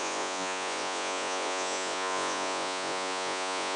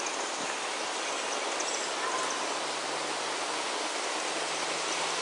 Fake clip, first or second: first